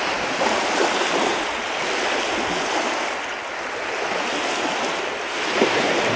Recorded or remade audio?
recorded